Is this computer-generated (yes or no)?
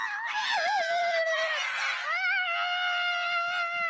no